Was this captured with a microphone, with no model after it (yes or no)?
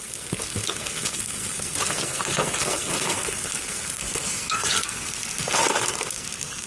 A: no